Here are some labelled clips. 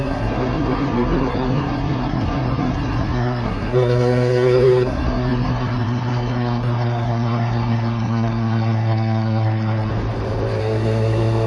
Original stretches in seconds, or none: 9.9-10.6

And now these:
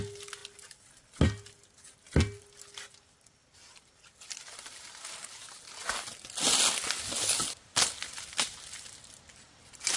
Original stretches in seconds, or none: 0.0-10.0

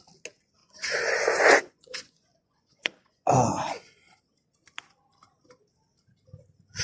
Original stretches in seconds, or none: 0.0-0.6; 4.2-6.8

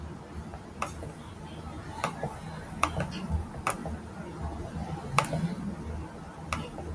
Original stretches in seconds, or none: 0.0-6.9

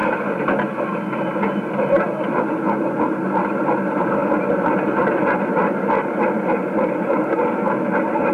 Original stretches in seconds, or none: 0.0-8.3